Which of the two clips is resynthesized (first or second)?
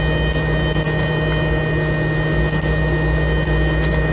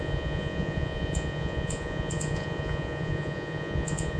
second